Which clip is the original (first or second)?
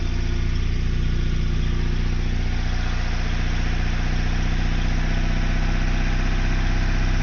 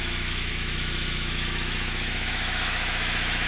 first